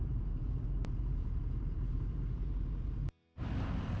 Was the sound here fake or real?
fake